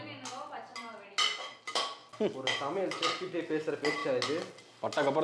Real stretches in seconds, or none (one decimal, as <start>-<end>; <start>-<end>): 0.0-5.2